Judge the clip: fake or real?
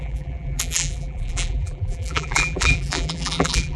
fake